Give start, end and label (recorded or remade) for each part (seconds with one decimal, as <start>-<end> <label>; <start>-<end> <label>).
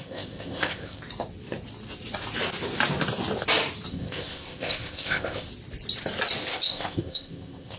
0.0-1.0 remade; 1.0-3.9 recorded; 3.9-5.5 remade; 5.5-6.4 recorded; 6.4-7.8 remade